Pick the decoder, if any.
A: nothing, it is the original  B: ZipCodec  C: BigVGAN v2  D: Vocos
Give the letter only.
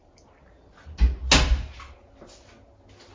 A